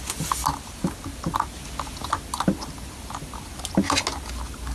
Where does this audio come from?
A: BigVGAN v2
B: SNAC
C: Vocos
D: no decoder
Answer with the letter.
D